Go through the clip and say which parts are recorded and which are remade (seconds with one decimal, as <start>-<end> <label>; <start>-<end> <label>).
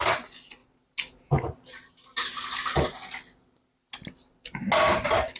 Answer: 0.0-5.4 recorded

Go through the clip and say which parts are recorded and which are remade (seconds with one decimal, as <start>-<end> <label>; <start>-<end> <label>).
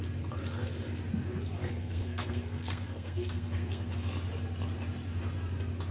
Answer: 0.0-1.6 recorded; 1.6-3.9 remade; 3.9-5.9 recorded